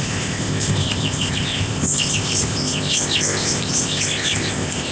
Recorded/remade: remade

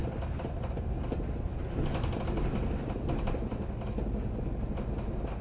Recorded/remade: recorded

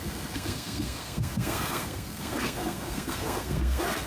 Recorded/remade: remade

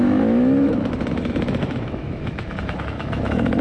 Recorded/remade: remade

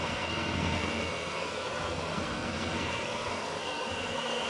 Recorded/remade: remade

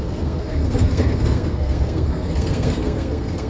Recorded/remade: remade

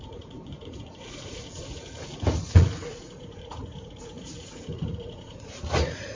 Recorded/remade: remade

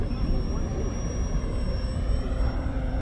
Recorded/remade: remade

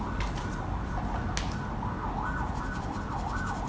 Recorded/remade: recorded